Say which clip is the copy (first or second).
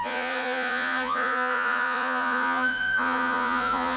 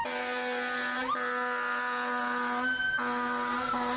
first